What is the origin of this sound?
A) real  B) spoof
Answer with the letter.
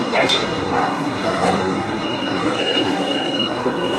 B